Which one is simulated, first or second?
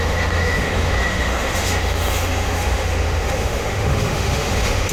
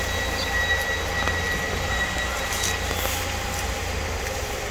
first